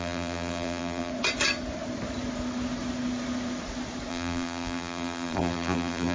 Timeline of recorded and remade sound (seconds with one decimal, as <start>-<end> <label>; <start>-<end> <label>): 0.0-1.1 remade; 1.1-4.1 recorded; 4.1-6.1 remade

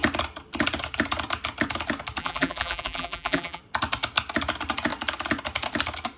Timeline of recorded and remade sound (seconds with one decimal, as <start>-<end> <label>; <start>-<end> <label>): 0.0-2.2 recorded; 2.2-3.6 remade; 3.6-6.2 recorded

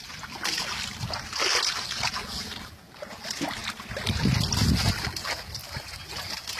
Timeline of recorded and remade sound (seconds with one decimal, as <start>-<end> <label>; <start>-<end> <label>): 0.0-5.6 recorded; 5.6-6.1 remade; 6.1-6.6 recorded

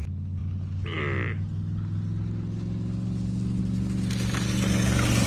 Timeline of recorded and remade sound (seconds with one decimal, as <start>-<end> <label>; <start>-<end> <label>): 0.0-5.3 recorded